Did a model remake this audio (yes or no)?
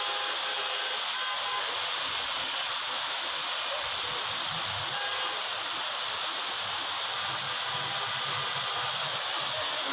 no